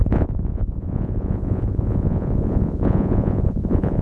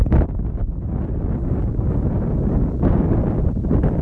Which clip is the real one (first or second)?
second